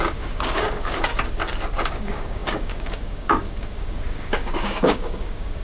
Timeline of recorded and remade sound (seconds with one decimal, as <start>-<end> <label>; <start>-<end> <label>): 0.0-1.1 remade; 1.1-2.0 recorded; 2.0-5.6 remade